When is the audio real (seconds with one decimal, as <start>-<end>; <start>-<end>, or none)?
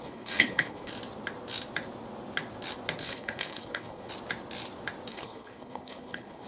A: 0.9-3.0; 4.1-5.1